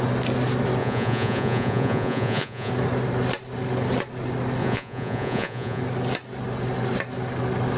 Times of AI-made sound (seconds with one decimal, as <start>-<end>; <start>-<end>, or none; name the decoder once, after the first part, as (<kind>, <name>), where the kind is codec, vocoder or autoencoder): 0.8-2.7 (vocoder, Vocos); 4.6-5.8